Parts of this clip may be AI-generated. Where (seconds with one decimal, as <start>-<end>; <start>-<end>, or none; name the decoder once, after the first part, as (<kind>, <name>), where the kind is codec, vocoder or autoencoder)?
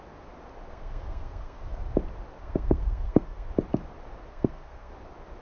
0.7-1.8 (codec, SNAC); 2.4-3.5; 4.3-4.9